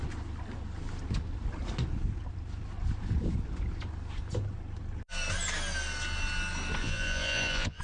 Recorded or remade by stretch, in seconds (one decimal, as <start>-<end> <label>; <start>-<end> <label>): 0.0-6.8 recorded; 6.8-7.8 remade